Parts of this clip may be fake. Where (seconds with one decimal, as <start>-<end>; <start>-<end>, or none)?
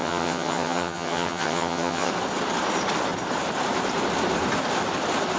0.0-2.1